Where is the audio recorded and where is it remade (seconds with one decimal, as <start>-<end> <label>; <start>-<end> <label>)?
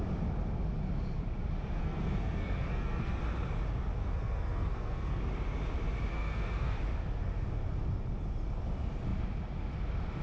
0.0-1.8 recorded; 1.8-3.2 remade; 3.2-4.0 recorded; 4.0-5.2 remade; 5.2-6.1 recorded; 6.1-6.8 remade; 6.8-10.2 recorded